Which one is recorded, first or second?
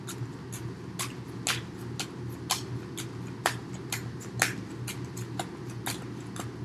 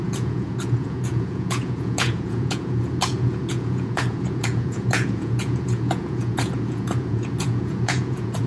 first